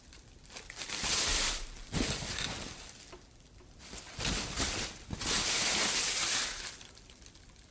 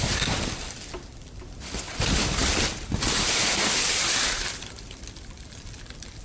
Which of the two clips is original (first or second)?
first